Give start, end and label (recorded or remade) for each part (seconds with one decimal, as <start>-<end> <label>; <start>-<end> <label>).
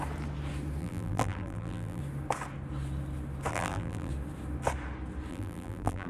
0.0-0.8 recorded; 0.8-2.0 remade; 2.0-3.5 recorded; 3.5-4.1 remade; 4.1-5.3 recorded; 5.3-6.1 remade